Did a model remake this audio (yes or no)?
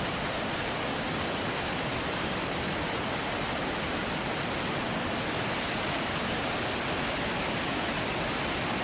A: no